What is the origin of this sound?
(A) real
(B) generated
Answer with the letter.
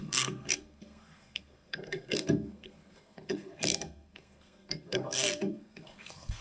B